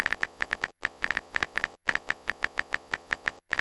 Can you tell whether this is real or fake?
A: fake